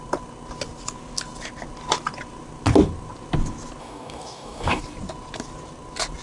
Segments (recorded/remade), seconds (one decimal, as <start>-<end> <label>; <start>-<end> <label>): 0.0-3.8 recorded; 3.8-4.8 remade; 4.8-6.2 recorded